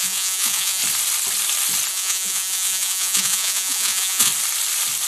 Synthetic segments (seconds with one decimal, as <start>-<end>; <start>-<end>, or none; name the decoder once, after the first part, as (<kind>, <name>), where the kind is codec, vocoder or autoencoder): 0.0-0.8 (vocoder, Vocos); 1.9-4.3